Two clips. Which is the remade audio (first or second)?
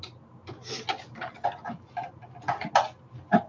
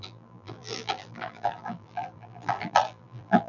second